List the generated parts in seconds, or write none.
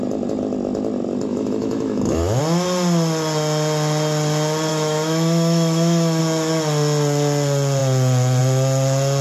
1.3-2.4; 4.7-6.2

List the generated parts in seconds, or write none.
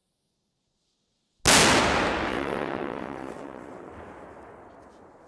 2.3-3.9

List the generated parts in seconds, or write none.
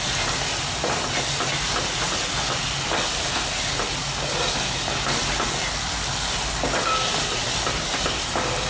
none